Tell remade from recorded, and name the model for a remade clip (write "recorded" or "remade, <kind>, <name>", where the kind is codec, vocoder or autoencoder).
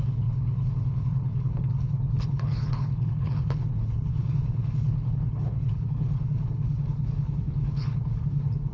remade, codec, HILCodec